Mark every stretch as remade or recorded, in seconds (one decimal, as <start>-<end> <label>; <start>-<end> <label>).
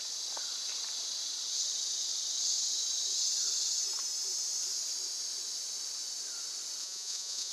0.0-6.8 recorded; 6.8-7.5 remade